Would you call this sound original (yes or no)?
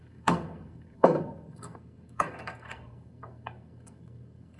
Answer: no